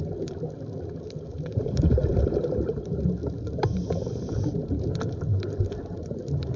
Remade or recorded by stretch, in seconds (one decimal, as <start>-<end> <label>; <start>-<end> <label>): 0.0-1.5 recorded; 1.5-2.8 remade; 2.8-3.2 recorded; 3.2-4.7 remade; 4.7-5.3 recorded; 5.3-6.6 remade